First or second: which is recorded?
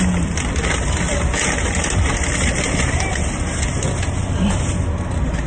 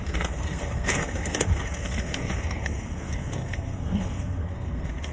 first